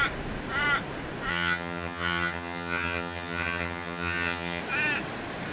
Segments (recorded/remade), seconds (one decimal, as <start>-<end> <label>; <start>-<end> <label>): 0.0-1.3 recorded; 1.3-4.6 remade; 4.6-5.5 recorded